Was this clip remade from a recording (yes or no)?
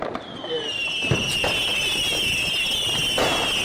no